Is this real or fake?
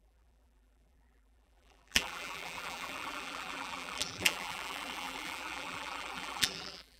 fake